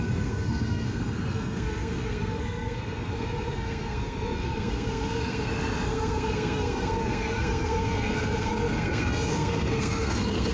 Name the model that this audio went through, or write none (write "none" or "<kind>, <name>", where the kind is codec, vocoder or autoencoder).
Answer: codec, SNAC